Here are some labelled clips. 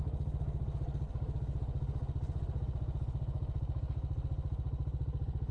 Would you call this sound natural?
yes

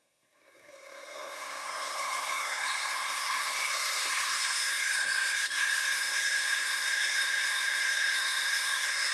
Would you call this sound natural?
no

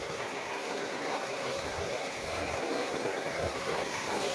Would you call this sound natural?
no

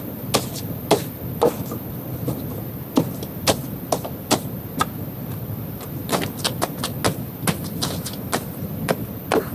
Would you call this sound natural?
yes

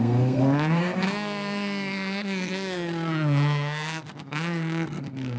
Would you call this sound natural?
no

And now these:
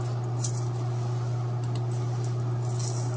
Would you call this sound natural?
yes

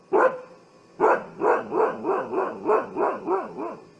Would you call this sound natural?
yes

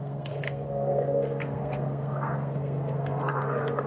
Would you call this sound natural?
no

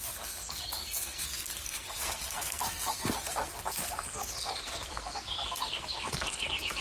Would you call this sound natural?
no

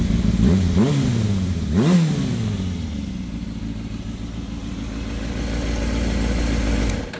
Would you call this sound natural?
yes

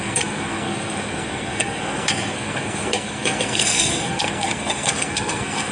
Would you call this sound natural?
no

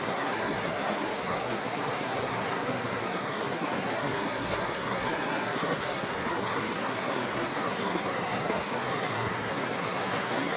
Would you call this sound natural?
no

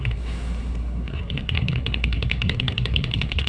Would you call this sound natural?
no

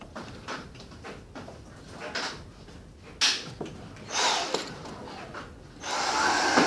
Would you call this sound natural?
yes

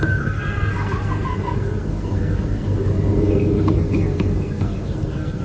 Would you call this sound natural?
no